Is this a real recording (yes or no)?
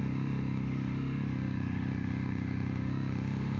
no